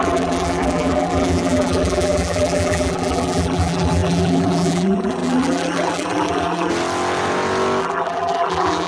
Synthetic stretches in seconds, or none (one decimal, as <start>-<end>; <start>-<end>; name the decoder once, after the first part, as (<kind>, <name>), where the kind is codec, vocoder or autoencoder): 0.0-6.7 (vocoder, BigVGAN v2); 7.8-8.9